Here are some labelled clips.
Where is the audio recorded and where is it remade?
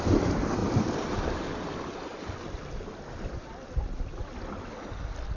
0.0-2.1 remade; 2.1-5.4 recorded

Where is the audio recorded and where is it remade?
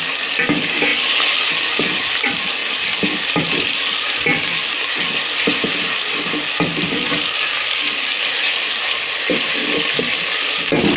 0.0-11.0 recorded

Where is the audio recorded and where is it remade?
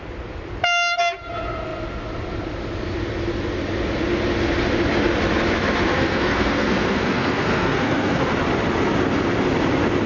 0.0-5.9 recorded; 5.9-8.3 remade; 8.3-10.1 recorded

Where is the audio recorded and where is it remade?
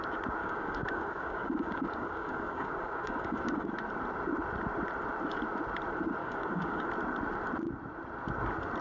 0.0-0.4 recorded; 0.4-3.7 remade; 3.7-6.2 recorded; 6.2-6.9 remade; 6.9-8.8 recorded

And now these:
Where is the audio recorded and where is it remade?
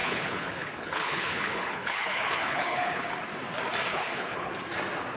0.0-3.1 remade; 3.1-3.9 recorded; 3.9-4.5 remade; 4.5-5.2 recorded